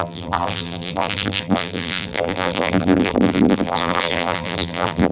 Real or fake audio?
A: fake